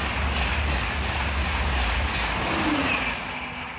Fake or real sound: real